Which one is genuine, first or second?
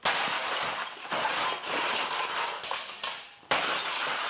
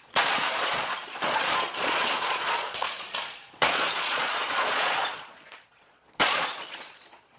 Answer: first